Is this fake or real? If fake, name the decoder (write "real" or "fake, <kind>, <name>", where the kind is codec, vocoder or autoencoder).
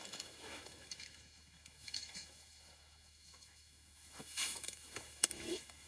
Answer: fake, autoencoder, DAC-VAE